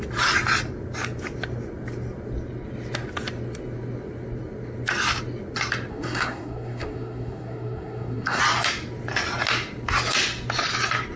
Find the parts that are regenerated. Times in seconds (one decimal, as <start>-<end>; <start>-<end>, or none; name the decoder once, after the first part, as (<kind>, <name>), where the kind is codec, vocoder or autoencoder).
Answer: 5.9-8.4 (codec, SNAC)